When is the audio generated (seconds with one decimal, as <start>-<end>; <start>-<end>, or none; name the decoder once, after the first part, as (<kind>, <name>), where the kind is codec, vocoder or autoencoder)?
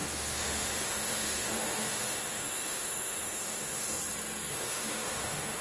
0.0-4.0 (autoencoder, DAC-VAE); 4.5-5.6